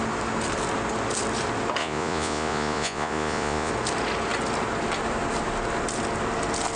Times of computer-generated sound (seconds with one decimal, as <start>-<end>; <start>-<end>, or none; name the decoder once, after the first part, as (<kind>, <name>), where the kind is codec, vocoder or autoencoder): 1.8-3.7 (vocoder, Vocos)